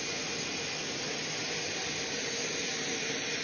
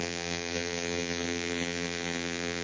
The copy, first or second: second